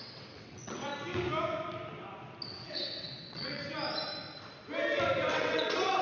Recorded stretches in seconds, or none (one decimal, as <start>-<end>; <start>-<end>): 0.9-2.5; 3.6-5.3